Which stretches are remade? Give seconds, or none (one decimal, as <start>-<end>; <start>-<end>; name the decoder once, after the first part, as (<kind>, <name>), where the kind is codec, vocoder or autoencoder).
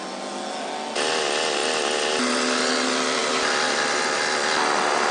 none